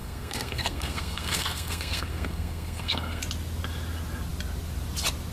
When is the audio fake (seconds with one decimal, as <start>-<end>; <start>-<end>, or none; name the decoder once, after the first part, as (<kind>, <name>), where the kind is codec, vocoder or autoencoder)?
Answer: 0.0-3.2 (codec, SNAC)